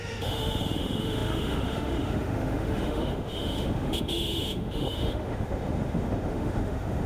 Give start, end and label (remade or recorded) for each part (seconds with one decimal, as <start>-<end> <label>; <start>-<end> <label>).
0.0-7.1 remade